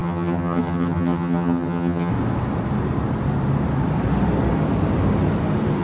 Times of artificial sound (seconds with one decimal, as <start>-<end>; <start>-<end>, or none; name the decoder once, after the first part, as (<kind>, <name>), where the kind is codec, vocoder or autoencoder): 0.0-2.1 (vocoder, HiFi-GAN)